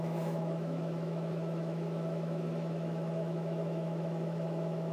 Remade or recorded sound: remade